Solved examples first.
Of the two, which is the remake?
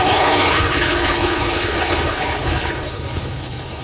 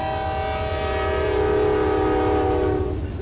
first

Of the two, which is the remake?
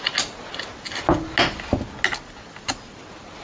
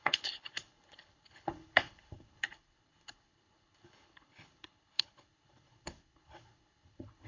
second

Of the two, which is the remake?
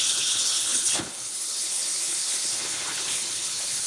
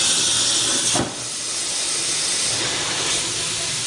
first